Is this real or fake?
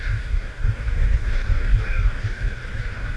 fake